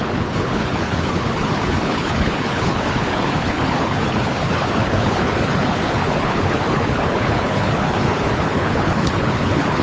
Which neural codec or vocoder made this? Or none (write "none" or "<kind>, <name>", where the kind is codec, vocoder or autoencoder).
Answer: codec, HILCodec